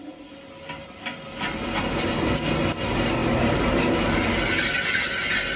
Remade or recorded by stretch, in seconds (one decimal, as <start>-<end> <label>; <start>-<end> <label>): 0.0-3.2 recorded; 3.2-3.9 remade; 3.9-5.6 recorded